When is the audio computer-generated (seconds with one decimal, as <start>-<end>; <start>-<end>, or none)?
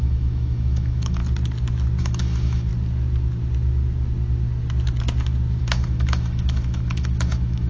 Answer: 0.0-1.2; 2.0-2.7; 5.6-7.7